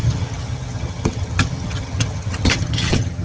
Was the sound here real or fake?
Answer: fake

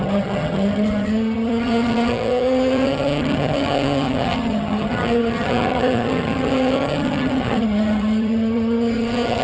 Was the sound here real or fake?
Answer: fake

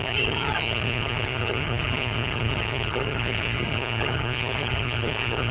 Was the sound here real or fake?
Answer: fake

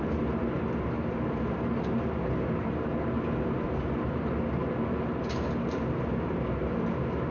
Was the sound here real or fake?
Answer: real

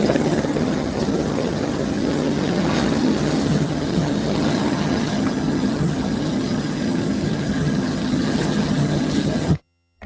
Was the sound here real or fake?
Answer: fake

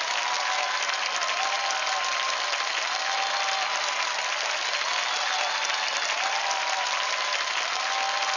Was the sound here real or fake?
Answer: real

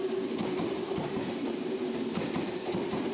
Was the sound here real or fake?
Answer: real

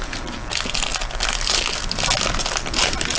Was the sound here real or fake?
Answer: real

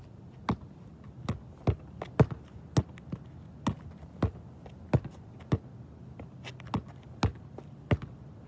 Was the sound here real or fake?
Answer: real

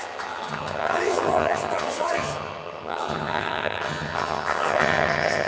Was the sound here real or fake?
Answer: fake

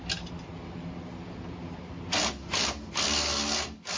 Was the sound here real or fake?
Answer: real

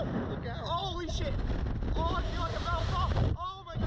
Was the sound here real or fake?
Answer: real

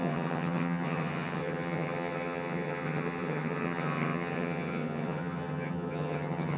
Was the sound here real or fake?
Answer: fake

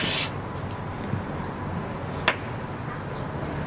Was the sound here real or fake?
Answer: real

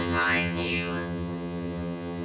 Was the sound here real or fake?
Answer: fake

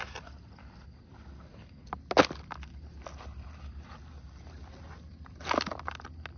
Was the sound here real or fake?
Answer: real